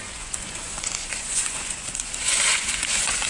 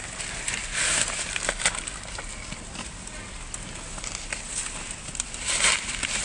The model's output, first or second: first